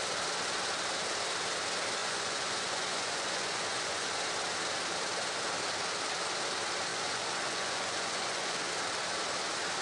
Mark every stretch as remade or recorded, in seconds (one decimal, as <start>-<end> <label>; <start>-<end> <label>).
0.0-2.0 recorded; 2.0-4.1 remade; 4.1-6.9 recorded; 6.9-8.7 remade; 8.7-9.8 recorded